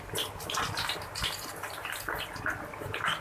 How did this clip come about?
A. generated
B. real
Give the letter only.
B